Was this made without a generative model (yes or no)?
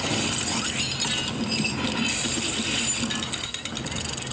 yes